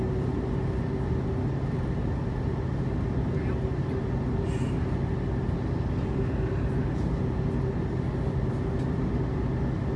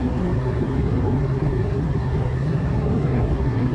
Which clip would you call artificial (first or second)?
second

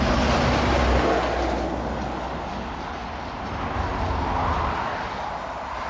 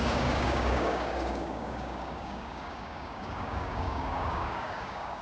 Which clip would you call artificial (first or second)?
second